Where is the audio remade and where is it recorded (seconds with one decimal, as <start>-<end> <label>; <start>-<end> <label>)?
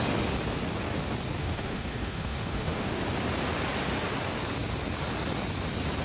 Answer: 0.0-1.4 recorded; 1.4-3.0 remade; 3.0-6.0 recorded